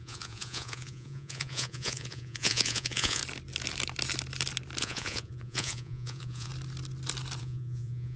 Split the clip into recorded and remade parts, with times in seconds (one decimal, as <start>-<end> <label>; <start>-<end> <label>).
0.0-3.2 remade; 3.2-4.8 recorded; 4.8-6.5 remade; 6.5-7.4 recorded; 7.4-8.2 remade

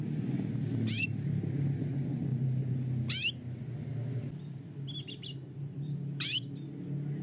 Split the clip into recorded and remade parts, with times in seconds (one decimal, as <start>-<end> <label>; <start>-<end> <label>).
0.0-7.2 recorded